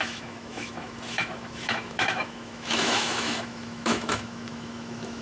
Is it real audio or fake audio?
fake